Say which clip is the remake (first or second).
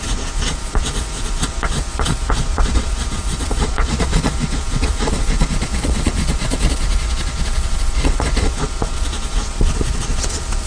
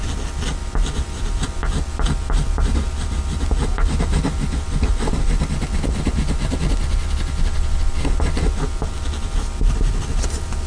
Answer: first